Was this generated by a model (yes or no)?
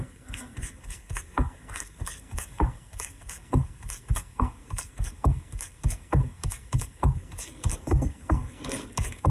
yes